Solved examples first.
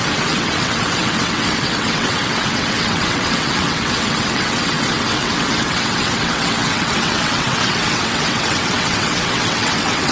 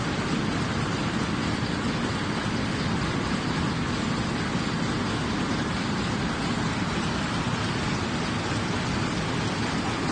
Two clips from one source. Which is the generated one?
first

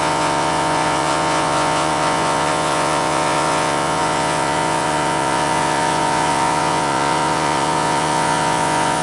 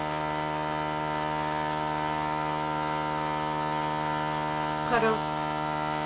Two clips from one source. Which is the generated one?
first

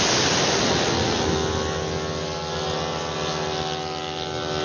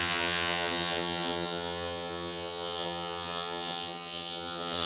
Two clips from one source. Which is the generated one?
second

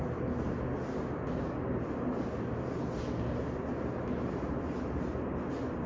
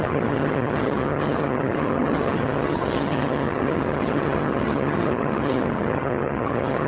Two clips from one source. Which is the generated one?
second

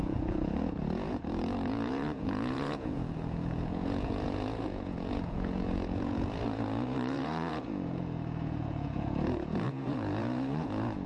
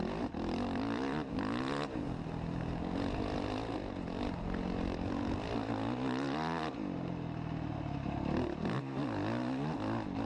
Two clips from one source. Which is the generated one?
first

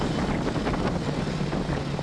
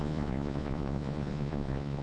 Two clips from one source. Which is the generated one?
second